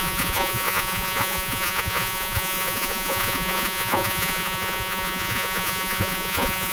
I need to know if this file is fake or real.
fake